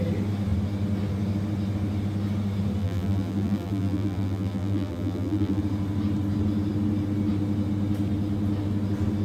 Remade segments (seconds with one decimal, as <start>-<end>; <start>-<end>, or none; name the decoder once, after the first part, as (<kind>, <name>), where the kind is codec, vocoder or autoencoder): 2.8-5.6 (vocoder, BigVGAN v2)